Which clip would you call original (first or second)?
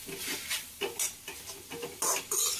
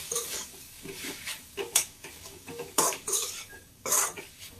first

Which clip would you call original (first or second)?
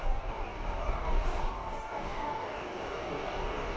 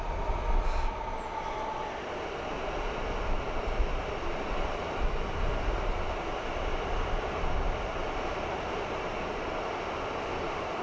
second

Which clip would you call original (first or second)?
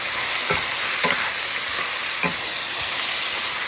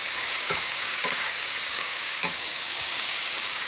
first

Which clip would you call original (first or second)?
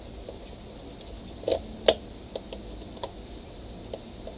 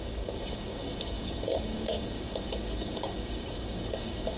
first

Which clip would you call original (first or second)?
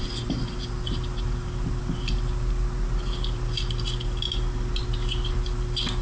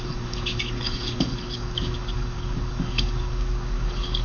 first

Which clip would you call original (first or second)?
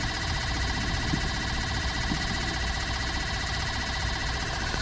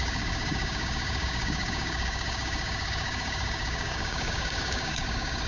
first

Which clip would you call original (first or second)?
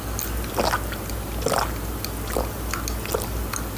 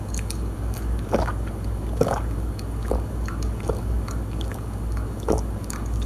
first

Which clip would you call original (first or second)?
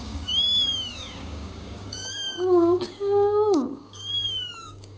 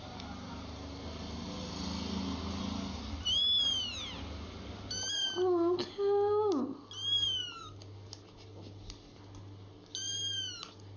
second